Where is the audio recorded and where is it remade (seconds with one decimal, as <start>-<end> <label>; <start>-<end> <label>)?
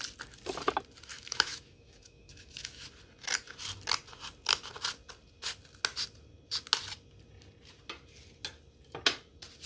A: 0.0-1.1 recorded; 1.1-2.8 remade; 2.8-9.7 recorded